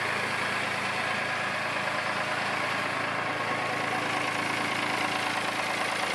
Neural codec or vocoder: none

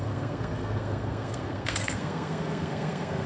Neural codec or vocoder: codec, SNAC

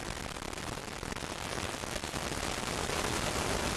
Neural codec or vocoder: none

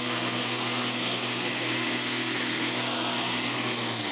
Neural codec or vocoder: codec, SNAC